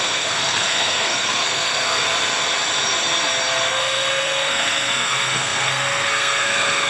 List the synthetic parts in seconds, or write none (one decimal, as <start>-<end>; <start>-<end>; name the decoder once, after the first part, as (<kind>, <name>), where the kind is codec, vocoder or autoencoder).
0.0-2.0 (codec, SNAC); 3.7-6.9